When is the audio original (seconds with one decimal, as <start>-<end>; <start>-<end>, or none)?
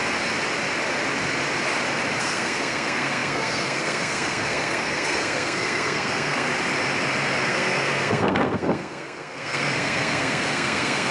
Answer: 0.0-2.2; 6.5-7.5